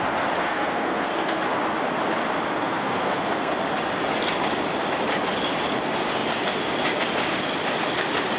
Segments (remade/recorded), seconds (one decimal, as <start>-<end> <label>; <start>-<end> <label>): 0.0-0.4 recorded; 0.4-1.4 remade; 1.4-2.6 recorded; 2.6-3.5 remade; 3.5-8.4 recorded